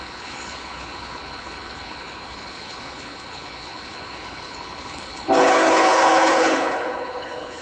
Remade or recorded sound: remade